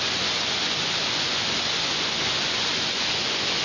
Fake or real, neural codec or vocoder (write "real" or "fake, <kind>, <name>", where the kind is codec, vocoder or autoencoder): fake, vocoder, Vocos